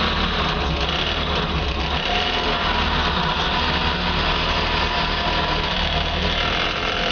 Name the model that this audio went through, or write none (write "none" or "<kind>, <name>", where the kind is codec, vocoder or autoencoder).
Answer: none